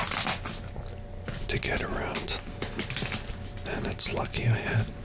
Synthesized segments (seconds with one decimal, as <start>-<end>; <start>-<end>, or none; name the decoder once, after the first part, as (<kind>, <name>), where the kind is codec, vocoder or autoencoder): none